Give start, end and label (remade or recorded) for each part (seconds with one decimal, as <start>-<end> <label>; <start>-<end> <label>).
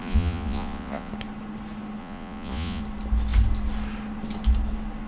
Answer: 0.0-1.1 remade; 1.1-2.0 recorded; 2.0-2.8 remade; 2.8-5.1 recorded